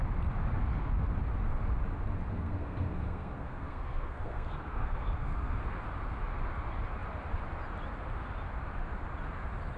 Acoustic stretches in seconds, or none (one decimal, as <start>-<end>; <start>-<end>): 0.0-2.3; 5.6-9.8